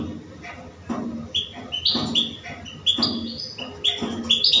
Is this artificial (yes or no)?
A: no